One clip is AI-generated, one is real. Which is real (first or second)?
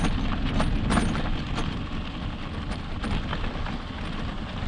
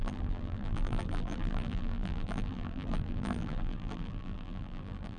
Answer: first